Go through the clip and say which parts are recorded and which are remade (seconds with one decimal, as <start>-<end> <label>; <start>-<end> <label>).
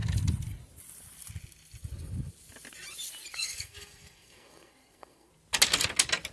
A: 0.0-3.3 recorded; 3.3-5.3 remade; 5.3-6.3 recorded